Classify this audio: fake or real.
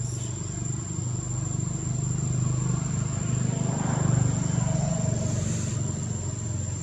real